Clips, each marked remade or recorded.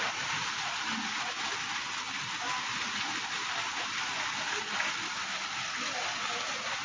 recorded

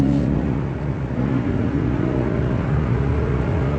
remade